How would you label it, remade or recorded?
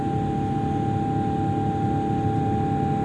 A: recorded